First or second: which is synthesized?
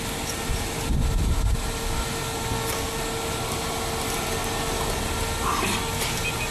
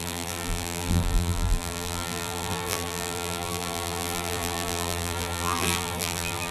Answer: second